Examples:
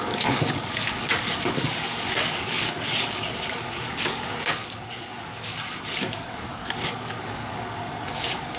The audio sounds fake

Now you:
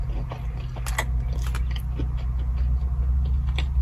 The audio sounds real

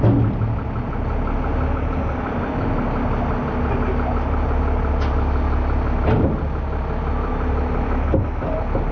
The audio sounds real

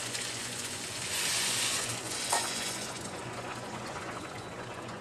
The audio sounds fake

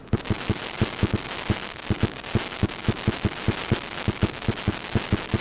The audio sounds real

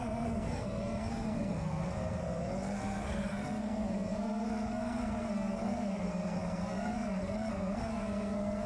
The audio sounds fake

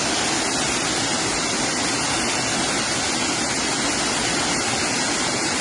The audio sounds real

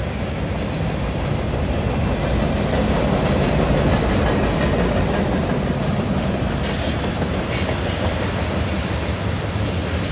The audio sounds real